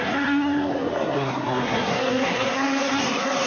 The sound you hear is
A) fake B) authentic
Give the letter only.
A